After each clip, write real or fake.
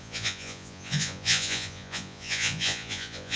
fake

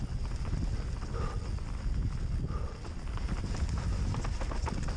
real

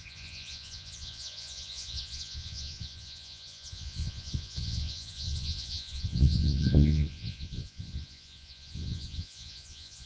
fake